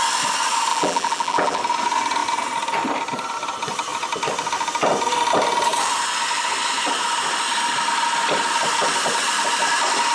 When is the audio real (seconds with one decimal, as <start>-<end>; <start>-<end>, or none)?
0.0-0.7; 1.6-10.1